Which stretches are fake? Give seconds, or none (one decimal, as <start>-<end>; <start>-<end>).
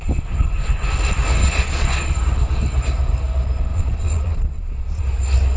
1.4-2.2; 3.7-5.0